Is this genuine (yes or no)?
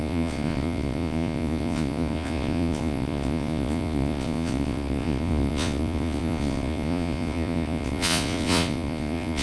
no